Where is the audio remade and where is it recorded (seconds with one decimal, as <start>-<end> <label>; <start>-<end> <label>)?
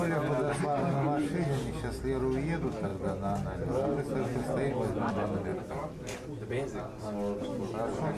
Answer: 0.0-8.2 recorded